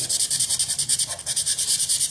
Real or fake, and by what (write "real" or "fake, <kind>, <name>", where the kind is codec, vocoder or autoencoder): real